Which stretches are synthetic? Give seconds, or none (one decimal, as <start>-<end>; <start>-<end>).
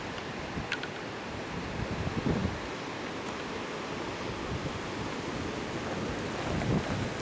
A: none